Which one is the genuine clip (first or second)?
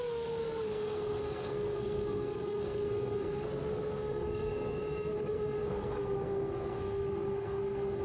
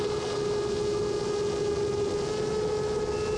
second